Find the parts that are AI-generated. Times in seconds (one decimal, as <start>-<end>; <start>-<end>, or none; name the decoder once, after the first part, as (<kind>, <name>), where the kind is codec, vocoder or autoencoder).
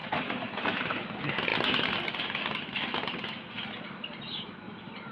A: 0.0-0.8 (vocoder, BigVGAN v2)